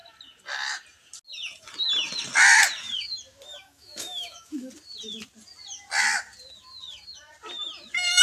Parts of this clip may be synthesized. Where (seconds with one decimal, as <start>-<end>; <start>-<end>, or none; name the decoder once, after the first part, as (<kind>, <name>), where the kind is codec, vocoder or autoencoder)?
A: 3.5-4.7 (autoencoder, DAC-VAE)